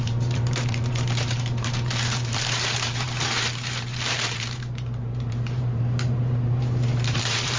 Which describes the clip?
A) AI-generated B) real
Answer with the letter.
A